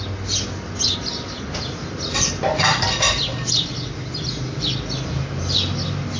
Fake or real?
real